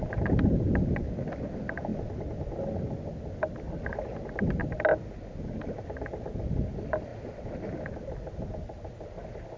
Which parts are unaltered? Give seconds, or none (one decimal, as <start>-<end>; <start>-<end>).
0.0-9.6